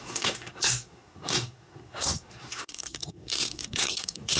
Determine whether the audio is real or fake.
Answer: fake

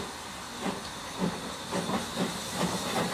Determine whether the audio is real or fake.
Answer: real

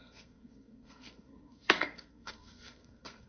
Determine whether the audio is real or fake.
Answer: fake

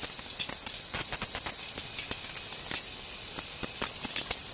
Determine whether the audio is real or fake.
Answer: real